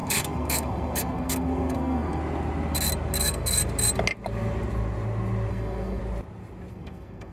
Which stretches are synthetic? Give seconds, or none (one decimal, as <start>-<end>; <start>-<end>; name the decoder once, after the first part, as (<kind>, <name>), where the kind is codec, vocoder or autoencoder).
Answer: 0.0-2.2 (codec, SNAC); 3.2-3.6; 5.5-6.0; 6.7-7.3